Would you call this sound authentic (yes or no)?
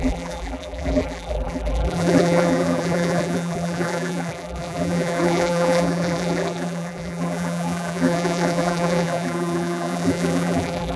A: no